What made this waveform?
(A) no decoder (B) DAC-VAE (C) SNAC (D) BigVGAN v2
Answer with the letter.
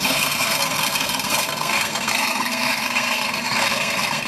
C